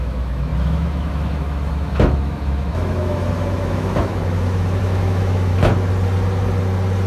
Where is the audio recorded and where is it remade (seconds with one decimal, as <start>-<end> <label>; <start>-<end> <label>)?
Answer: 0.0-5.5 remade; 5.5-7.1 recorded

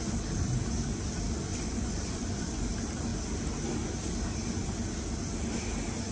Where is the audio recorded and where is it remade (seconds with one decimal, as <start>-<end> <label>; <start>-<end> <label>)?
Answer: 0.0-1.5 recorded; 1.5-2.7 remade; 2.7-6.1 recorded

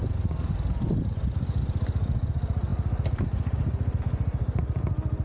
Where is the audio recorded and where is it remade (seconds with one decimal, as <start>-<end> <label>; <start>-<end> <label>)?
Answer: 0.0-5.2 recorded

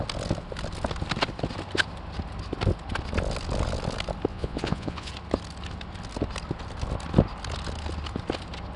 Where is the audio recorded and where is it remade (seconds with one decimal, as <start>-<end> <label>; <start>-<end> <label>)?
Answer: 0.0-4.3 recorded; 4.3-5.1 remade; 5.1-8.8 recorded

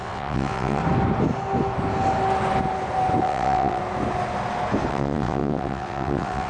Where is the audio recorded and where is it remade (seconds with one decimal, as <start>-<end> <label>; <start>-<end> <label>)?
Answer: 0.0-0.8 remade; 0.8-3.2 recorded; 3.2-3.8 remade; 3.8-4.9 recorded; 4.9-6.5 remade

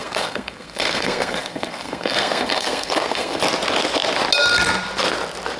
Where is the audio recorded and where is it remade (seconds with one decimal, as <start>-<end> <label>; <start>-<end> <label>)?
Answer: 0.0-3.4 remade; 3.4-5.6 recorded